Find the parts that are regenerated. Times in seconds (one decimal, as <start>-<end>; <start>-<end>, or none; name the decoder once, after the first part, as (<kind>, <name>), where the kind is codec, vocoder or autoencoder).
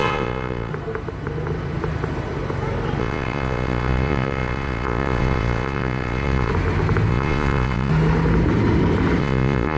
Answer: 0.0-0.7 (vocoder, Vocos); 3.0-6.5; 7.1-7.9; 9.2-9.8